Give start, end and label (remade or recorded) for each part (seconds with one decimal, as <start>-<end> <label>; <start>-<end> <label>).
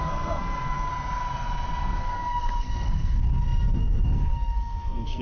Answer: 0.0-0.9 remade; 0.9-2.0 recorded; 2.0-5.2 remade